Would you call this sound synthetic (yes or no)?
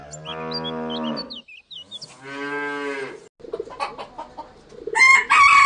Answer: no